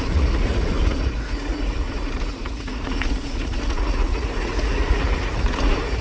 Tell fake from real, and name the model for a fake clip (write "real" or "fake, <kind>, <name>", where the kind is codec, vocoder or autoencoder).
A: fake, vocoder, Vocos